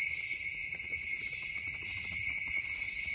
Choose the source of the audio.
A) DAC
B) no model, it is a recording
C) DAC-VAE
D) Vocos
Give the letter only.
D